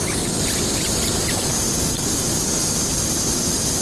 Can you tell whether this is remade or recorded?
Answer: recorded